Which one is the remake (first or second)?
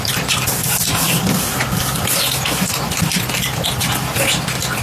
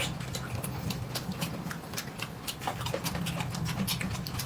second